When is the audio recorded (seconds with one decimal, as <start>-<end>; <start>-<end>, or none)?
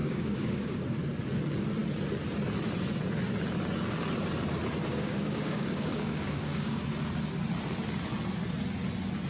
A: 0.8-4.9; 6.8-9.3